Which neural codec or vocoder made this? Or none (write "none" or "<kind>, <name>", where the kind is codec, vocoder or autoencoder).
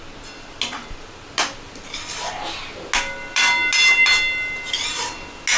none